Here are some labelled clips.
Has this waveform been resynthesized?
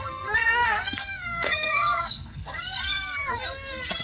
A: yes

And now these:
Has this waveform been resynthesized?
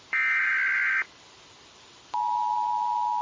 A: no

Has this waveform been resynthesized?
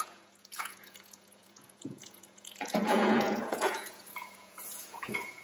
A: yes